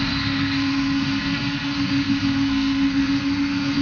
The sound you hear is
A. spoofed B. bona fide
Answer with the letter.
A